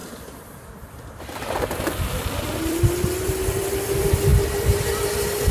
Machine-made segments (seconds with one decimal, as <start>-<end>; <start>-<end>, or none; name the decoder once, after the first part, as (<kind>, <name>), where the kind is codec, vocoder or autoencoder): 1.2-4.3 (vocoder, BigVGAN v2)